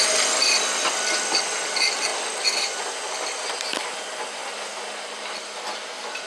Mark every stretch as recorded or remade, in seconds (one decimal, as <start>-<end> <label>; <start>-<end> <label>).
0.0-6.3 recorded